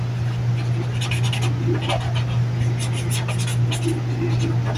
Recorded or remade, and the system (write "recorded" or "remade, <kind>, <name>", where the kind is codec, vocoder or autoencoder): recorded